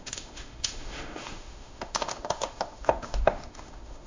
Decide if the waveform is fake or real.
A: fake